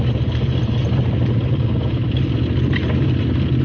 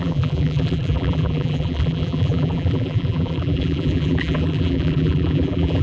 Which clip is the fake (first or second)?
second